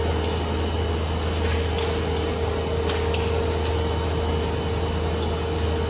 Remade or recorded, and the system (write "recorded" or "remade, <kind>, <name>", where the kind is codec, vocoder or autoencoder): recorded